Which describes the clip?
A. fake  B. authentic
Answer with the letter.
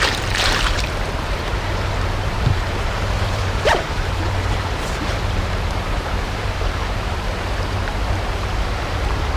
A